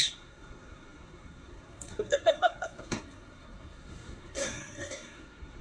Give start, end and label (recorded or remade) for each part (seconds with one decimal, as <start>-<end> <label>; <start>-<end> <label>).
0.0-5.6 remade